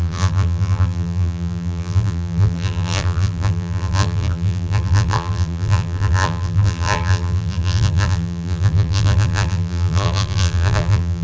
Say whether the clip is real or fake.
fake